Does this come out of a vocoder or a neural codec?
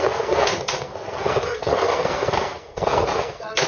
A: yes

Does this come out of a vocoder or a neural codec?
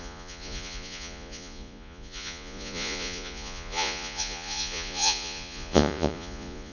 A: yes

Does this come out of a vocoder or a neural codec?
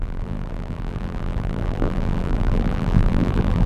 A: yes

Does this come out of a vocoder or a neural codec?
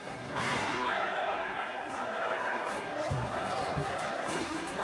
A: yes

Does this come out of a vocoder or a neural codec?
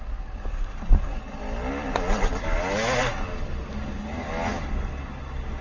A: no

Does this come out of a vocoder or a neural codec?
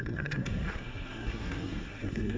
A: yes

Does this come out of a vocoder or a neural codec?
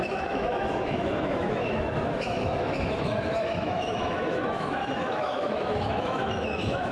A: yes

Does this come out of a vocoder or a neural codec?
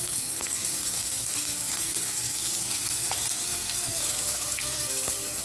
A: yes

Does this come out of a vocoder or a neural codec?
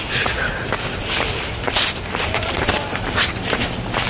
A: no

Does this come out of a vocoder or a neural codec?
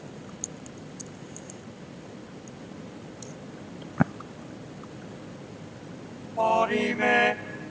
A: no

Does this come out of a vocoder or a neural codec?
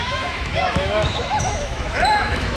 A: yes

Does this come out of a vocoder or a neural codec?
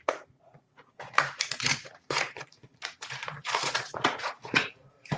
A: yes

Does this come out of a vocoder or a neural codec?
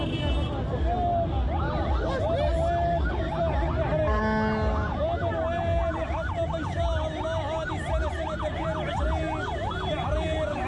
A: no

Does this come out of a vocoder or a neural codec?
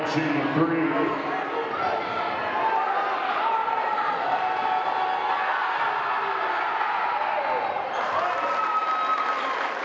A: no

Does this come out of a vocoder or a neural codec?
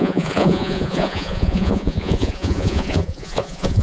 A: yes